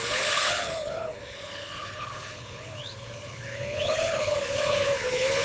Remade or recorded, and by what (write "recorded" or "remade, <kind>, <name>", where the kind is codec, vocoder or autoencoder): remade, codec, HILCodec